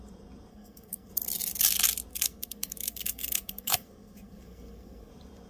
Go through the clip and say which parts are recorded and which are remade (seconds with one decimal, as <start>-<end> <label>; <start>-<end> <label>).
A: 0.0-0.5 recorded; 0.5-1.1 remade; 1.1-2.1 recorded; 2.1-5.1 remade; 5.1-5.5 recorded